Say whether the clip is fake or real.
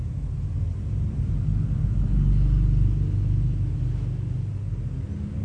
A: real